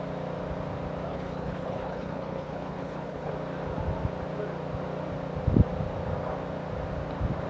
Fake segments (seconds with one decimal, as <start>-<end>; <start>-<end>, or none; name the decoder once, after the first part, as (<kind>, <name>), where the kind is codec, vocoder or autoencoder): 1.1-3.3 (codec, HILCodec)